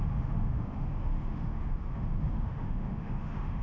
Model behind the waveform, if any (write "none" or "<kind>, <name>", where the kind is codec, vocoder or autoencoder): autoencoder, DAC-VAE